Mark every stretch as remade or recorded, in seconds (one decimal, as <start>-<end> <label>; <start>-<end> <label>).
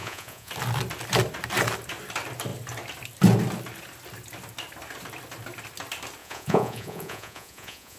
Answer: 0.0-0.5 remade; 0.5-6.2 recorded; 6.2-8.0 remade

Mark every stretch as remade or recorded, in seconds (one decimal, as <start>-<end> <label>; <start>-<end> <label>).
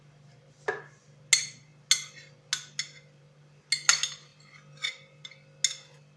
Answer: 0.0-6.2 recorded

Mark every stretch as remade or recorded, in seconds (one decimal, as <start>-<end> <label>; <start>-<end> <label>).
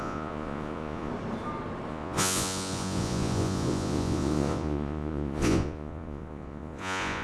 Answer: 0.0-1.1 remade; 1.1-1.9 recorded; 1.9-7.2 remade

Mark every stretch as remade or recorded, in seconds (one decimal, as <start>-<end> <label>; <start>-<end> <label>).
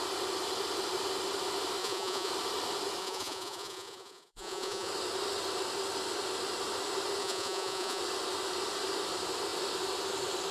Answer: 0.0-1.8 recorded; 1.8-2.3 remade; 2.3-3.0 recorded; 3.0-4.9 remade; 4.9-7.2 recorded; 7.2-8.0 remade; 8.0-10.5 recorded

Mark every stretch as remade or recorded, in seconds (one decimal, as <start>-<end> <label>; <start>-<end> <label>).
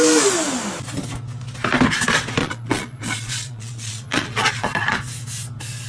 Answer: 0.0-2.4 recorded; 2.4-5.0 remade; 5.0-5.9 recorded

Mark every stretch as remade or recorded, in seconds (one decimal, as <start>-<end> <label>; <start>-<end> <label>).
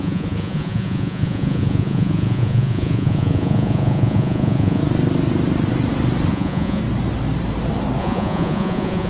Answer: 0.0-4.8 remade; 4.8-6.3 recorded; 6.3-6.8 remade; 6.8-8.0 recorded; 8.0-9.1 remade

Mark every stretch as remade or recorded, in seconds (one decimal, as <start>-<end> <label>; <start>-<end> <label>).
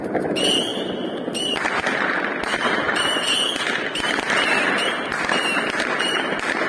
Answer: 0.0-6.7 recorded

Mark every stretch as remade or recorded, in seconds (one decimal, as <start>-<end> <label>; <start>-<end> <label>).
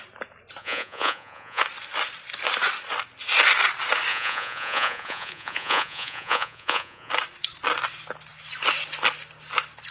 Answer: 0.0-0.6 recorded; 0.6-1.6 remade; 1.6-4.1 recorded; 4.1-7.1 remade; 7.1-9.9 recorded